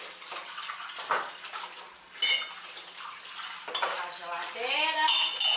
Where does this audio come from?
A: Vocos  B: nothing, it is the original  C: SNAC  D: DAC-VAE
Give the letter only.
B